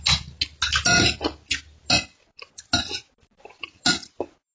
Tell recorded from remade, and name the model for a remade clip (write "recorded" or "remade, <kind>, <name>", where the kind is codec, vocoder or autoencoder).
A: recorded